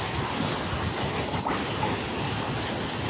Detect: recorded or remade recorded